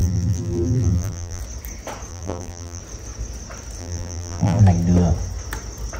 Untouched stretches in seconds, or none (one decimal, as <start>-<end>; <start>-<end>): 1.4-2.1; 2.8-3.8; 4.6-6.0